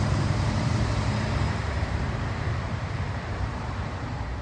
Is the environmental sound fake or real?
fake